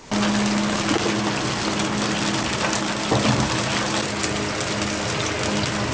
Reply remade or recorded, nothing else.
recorded